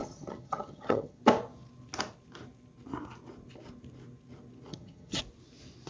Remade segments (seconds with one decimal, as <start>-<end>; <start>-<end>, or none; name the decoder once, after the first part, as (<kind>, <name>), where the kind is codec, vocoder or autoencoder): 0.0-1.2 (vocoder, HiFi-GAN); 4.7-5.2